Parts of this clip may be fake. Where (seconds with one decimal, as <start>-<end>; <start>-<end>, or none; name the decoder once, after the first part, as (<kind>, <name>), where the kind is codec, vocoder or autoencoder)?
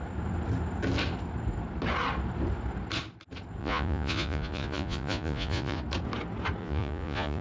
3.6-5.8 (vocoder, Vocos); 6.6-7.4